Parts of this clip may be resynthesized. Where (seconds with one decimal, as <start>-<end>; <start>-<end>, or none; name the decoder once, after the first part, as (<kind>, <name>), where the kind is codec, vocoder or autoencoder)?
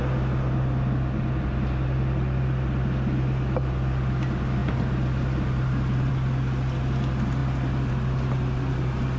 4.6-6.1 (vocoder, BigVGAN v2); 7.4-7.9